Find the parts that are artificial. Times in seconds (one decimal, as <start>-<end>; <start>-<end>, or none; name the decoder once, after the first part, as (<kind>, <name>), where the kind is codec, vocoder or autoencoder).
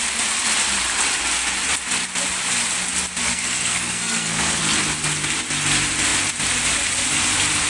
3.2-4.6 (codec, SNAC)